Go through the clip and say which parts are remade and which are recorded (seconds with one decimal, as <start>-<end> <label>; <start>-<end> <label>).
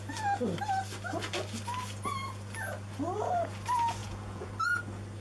0.0-4.0 recorded; 4.0-4.5 remade; 4.5-5.2 recorded